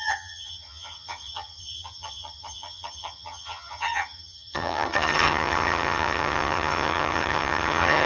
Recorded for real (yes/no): no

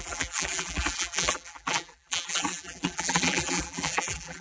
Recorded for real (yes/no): no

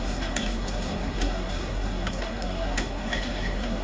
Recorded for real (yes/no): no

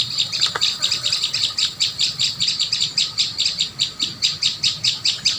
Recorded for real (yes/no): yes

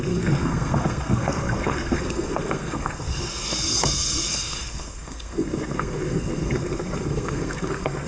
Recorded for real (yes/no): no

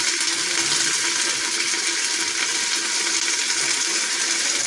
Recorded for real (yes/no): yes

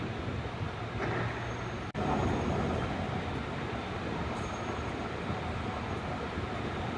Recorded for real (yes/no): yes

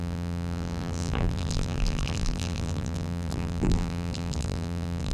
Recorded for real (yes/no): no